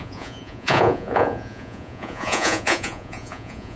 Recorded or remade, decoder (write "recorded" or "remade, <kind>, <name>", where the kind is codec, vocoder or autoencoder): remade, vocoder, Vocos